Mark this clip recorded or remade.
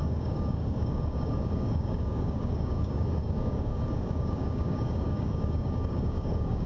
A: remade